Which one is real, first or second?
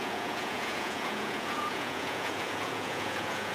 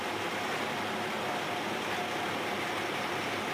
second